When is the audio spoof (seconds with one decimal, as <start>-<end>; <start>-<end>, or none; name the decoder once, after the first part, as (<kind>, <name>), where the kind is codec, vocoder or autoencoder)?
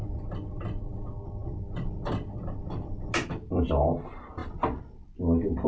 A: none